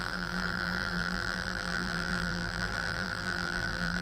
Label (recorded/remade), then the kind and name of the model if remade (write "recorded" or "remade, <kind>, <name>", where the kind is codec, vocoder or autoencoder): remade, vocoder, BigVGAN v2